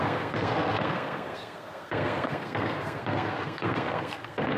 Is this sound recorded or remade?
remade